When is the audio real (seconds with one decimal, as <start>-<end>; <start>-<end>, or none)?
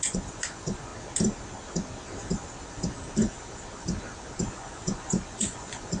0.9-4.5